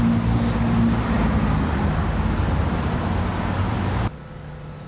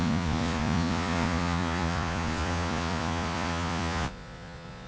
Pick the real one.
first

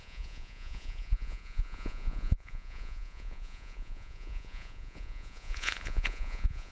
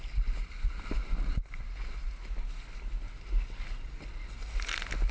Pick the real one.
second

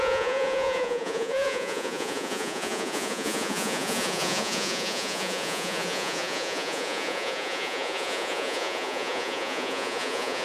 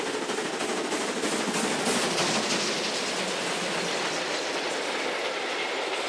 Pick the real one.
second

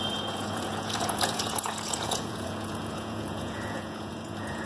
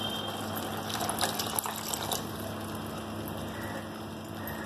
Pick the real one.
second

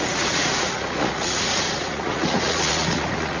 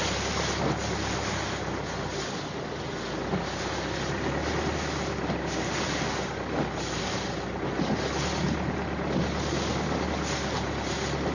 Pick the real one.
second